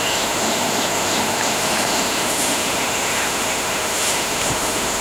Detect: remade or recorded remade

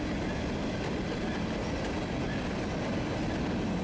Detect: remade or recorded recorded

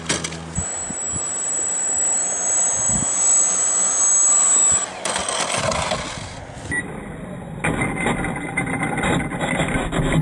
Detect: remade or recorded recorded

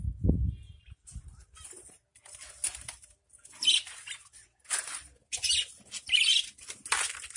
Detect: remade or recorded recorded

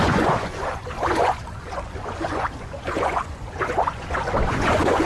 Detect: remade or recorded remade